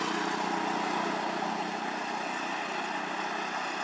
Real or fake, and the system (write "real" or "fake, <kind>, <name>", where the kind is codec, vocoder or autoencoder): real